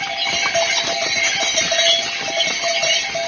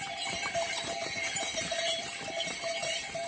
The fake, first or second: second